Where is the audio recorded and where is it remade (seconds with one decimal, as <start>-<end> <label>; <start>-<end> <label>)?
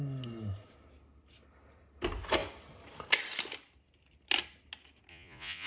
0.0-5.1 recorded; 5.1-5.7 remade